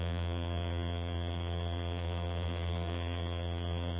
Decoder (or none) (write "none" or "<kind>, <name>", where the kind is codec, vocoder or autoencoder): vocoder, BigVGAN v2